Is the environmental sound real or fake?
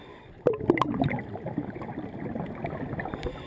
real